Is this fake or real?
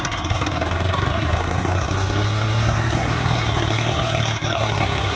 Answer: fake